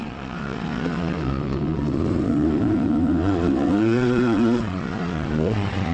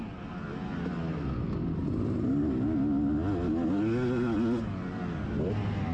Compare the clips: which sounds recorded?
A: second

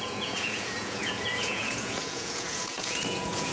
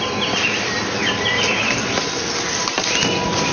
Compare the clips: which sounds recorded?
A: second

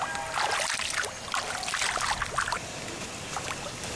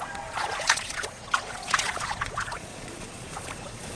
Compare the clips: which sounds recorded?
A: first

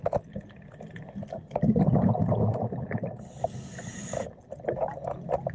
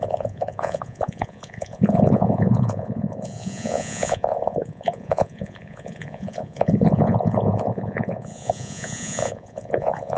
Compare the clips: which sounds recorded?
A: first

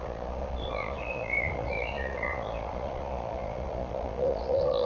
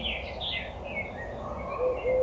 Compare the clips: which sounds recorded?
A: second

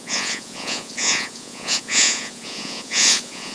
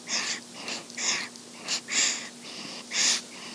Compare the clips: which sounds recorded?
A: second